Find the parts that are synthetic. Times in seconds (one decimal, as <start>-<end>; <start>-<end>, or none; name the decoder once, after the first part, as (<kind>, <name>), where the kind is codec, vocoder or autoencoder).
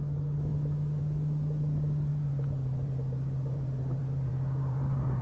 2.1-5.2 (vocoder, BigVGAN v2)